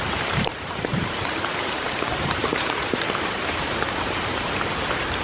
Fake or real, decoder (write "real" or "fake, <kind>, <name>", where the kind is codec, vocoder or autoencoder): fake, vocoder, BigVGAN v2